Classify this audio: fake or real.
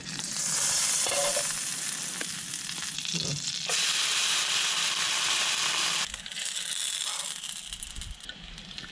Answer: real